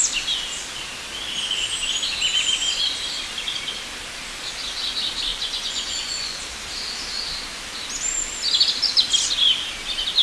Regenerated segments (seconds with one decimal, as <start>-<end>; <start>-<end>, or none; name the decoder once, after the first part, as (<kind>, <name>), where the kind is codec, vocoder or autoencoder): 5.3-6.4 (vocoder, Vocos)